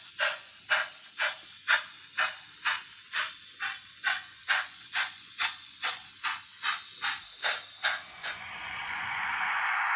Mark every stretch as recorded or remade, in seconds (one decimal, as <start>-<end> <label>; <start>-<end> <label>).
0.0-0.5 remade; 0.5-3.9 recorded; 3.9-6.0 remade; 6.0-8.2 recorded; 8.2-10.0 remade